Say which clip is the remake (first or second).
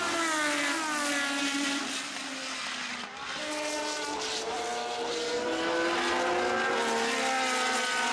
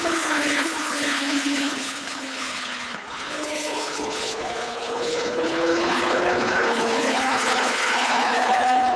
second